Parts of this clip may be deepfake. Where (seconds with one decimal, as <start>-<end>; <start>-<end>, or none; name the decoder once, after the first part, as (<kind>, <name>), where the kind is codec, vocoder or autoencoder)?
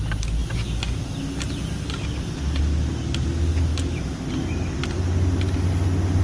none